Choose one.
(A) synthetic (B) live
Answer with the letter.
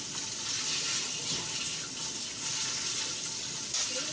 B